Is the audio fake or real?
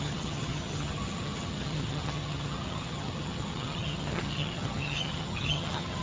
fake